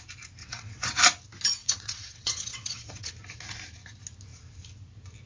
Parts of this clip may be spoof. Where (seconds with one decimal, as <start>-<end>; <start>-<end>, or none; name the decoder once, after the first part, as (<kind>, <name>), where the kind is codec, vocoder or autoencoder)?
0.4-1.0 (vocoder, WaveNeXt); 1.6-3.1